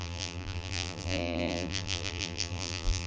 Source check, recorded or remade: remade